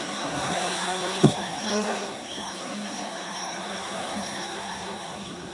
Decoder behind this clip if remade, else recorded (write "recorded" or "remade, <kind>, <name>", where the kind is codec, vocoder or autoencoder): remade, codec, SNAC